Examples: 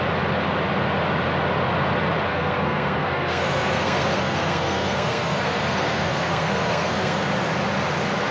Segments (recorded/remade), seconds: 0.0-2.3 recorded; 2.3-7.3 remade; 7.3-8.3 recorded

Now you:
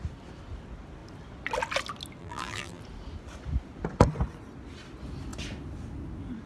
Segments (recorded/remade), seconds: 0.0-2.2 recorded; 2.2-2.8 remade; 2.8-6.5 recorded

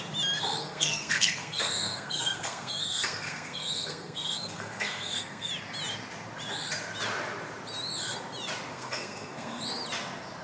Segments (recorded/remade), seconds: 0.0-0.6 recorded; 0.6-5.5 remade; 5.5-8.7 recorded; 8.7-9.6 remade; 9.6-10.4 recorded